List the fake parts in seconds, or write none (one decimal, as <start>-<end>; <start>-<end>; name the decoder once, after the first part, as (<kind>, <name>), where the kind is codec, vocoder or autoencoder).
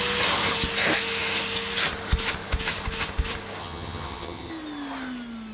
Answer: 3.6-4.5 (vocoder, HiFi-GAN)